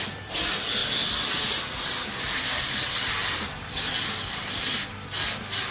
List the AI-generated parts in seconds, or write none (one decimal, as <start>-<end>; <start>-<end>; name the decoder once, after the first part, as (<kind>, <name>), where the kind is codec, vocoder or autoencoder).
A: none